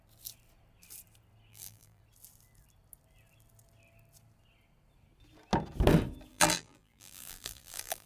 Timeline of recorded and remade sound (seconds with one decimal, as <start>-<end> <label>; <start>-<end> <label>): 0.0-1.5 recorded; 1.5-2.0 remade; 2.0-6.3 recorded; 6.3-8.1 remade